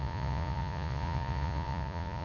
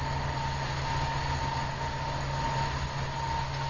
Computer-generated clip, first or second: first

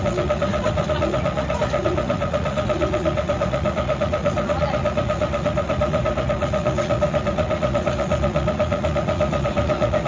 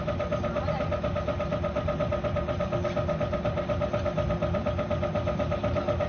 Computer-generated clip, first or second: first